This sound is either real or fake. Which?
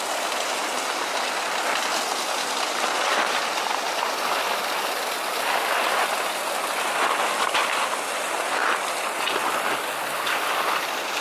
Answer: real